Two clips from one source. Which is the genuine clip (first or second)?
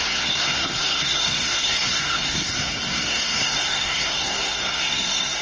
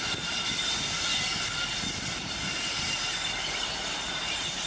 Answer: second